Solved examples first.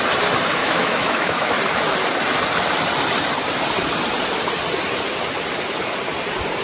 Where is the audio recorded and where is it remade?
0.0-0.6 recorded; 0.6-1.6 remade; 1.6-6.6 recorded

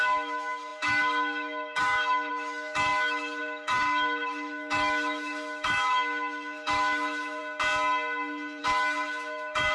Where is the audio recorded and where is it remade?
0.0-7.4 remade; 7.4-8.6 recorded; 8.6-9.7 remade

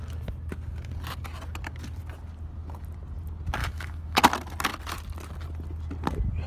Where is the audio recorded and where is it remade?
0.0-3.6 recorded; 3.6-4.2 remade; 4.2-6.5 recorded

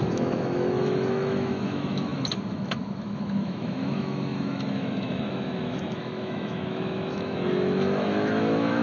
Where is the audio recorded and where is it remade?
0.0-8.8 remade

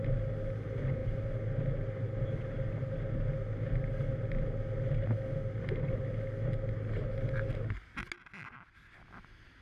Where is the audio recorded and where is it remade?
0.0-9.6 recorded

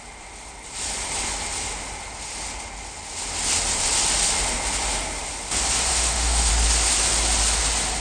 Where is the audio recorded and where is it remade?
0.0-5.9 recorded; 5.9-6.5 remade; 6.5-8.0 recorded

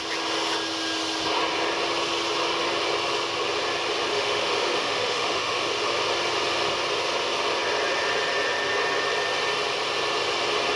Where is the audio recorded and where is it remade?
0.0-4.1 recorded; 4.1-5.9 remade; 5.9-10.8 recorded

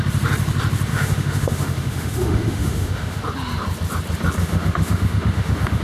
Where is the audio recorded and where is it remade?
0.0-0.9 recorded; 0.9-3.2 remade; 3.2-4.4 recorded; 4.4-5.8 remade